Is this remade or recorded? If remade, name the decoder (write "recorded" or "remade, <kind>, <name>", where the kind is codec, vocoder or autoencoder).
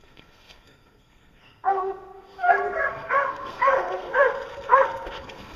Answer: remade, codec, SNAC